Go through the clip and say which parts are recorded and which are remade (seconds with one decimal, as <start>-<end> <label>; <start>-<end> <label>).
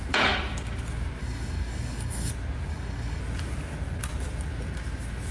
0.0-1.2 recorded; 1.2-2.3 remade; 2.3-2.7 recorded; 2.7-3.2 remade; 3.2-5.3 recorded